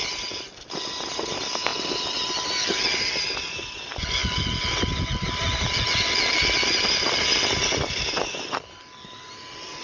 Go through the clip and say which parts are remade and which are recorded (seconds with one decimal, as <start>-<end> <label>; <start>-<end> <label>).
0.0-9.8 recorded